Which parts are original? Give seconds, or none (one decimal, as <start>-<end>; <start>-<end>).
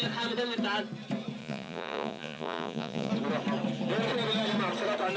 0.0-1.4; 3.1-5.2